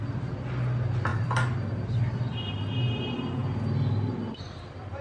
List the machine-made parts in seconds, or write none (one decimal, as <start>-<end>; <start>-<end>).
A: none